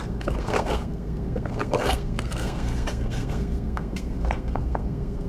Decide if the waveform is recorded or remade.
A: remade